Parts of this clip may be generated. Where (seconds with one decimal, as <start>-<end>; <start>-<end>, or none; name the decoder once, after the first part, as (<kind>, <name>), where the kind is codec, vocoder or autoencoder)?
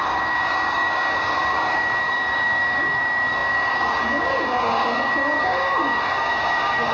0.0-6.9 (codec, DAC)